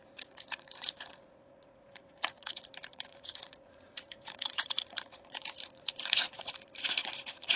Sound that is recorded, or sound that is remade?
remade